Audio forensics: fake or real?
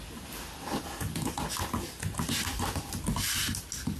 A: real